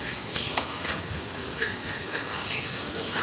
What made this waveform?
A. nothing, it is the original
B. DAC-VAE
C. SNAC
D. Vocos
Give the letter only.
C